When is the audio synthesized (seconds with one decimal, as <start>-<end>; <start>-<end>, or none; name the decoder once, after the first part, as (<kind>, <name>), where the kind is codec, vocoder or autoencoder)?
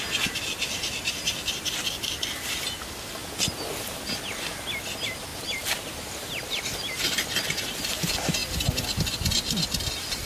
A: 5.3-6.6 (vocoder, BigVGAN v2)